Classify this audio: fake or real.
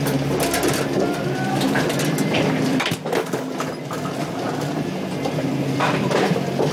fake